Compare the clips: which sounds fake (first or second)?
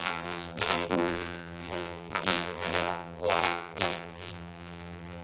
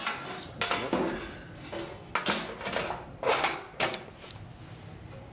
first